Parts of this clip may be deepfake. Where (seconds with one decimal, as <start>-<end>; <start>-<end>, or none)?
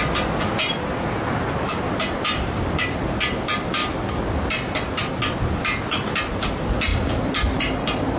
2.0-3.0; 6.9-8.2